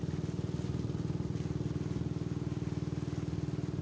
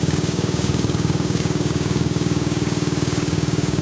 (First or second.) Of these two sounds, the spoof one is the second